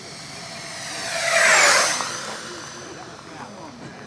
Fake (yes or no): no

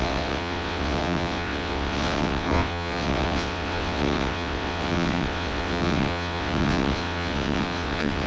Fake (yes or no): yes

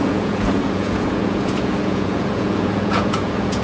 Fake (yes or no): yes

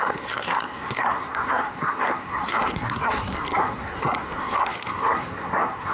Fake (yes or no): yes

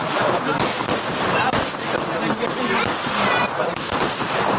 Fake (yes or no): no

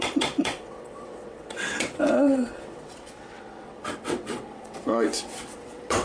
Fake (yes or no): yes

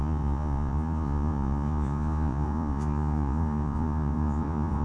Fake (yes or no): yes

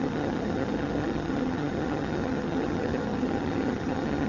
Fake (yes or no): yes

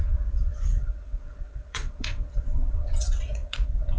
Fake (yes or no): yes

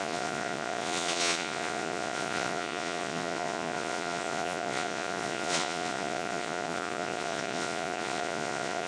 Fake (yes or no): yes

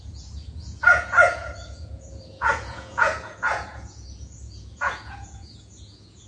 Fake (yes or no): yes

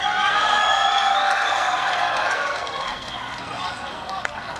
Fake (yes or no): yes